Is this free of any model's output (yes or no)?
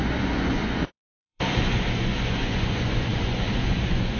no